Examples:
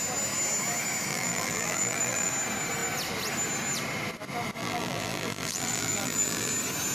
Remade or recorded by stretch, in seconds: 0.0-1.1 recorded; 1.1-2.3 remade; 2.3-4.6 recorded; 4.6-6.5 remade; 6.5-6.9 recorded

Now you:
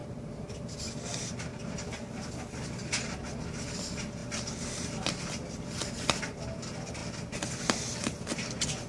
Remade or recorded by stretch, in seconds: 0.0-0.9 remade; 0.9-1.5 recorded; 1.5-2.3 remade; 2.3-8.9 recorded

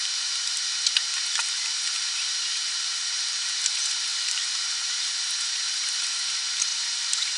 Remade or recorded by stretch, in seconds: 0.0-4.1 recorded; 4.1-4.6 remade; 4.6-7.4 recorded

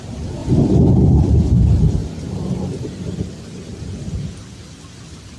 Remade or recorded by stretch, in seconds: 0.0-0.4 recorded; 0.4-0.9 remade; 0.9-5.4 recorded

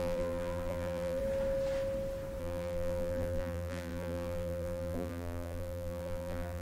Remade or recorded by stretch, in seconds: 0.0-1.2 remade; 1.2-2.4 recorded; 2.4-6.6 remade

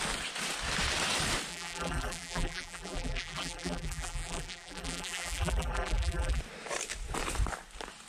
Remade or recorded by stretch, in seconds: 0.0-1.5 recorded; 1.5-6.4 remade; 6.4-8.1 recorded

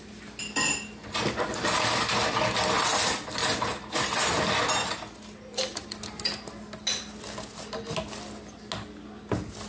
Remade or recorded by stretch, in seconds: 0.0-9.7 recorded

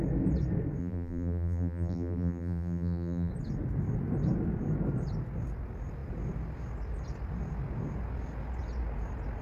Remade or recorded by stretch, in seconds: 0.0-0.8 recorded; 0.8-3.3 remade; 3.3-9.4 recorded